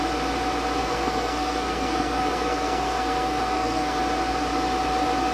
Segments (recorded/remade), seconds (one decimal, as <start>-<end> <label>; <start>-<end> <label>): 0.0-0.8 recorded; 0.8-4.0 remade; 4.0-5.3 recorded